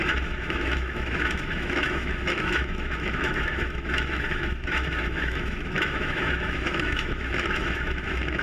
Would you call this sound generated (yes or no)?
yes